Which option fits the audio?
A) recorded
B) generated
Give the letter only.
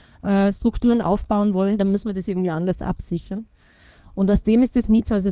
B